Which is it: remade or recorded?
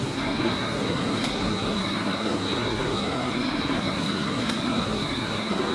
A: remade